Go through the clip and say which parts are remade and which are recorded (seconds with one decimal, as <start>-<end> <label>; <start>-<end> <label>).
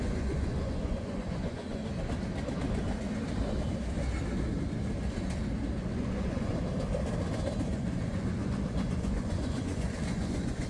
0.0-1.8 remade; 1.8-5.8 recorded; 5.8-6.5 remade; 6.5-7.7 recorded; 7.7-10.7 remade